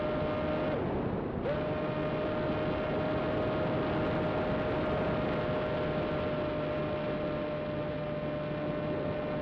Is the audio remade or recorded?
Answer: recorded